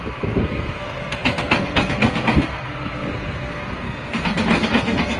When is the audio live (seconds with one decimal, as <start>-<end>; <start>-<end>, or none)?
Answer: none